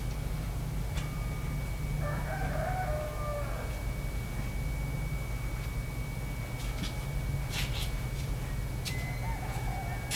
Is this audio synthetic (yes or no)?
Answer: no